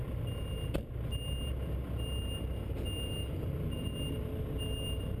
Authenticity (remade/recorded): recorded